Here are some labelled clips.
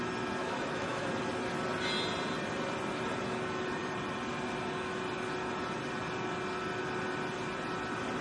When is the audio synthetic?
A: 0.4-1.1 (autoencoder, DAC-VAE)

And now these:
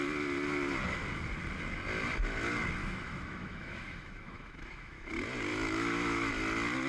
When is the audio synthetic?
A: 2.8-5.1 (autoencoder, DAC-VAE); 5.5-6.3

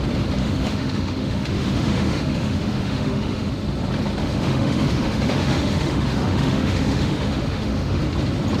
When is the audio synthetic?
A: 0.4-3.5 (autoencoder, DAC-VAE); 4.2-8.0

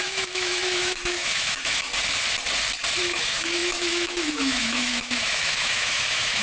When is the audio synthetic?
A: 0.0-1.9 (autoencoder, DAC-VAE); 3.0-6.4

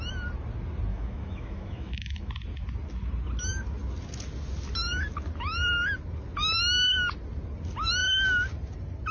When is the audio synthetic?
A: 0.9-2.3 (autoencoder, DAC-VAE)